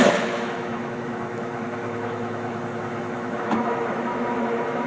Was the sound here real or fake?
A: fake